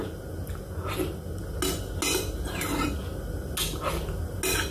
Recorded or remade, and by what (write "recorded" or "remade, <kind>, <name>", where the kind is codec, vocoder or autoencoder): recorded